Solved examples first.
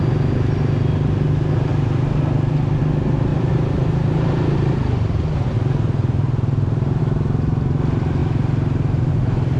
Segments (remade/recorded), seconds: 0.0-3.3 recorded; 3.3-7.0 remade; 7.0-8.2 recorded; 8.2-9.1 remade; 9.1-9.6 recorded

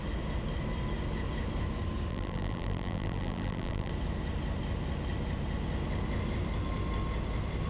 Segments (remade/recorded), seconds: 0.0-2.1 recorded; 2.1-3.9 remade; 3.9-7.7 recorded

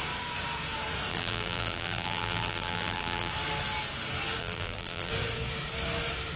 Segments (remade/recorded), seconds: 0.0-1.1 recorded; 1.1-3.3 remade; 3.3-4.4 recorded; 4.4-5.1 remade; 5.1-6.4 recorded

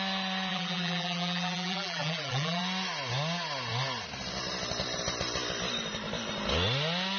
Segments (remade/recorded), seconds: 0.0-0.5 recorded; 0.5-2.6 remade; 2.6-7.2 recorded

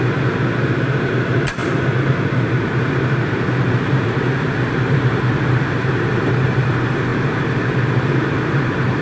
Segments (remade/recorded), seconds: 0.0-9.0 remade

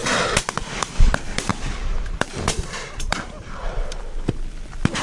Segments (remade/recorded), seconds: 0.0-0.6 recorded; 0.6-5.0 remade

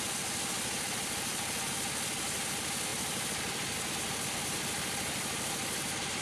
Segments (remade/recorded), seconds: 0.0-6.2 recorded